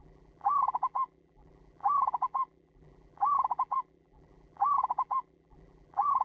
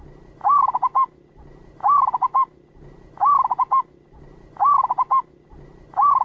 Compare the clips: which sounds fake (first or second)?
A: first